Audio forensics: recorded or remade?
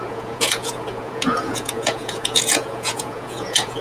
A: remade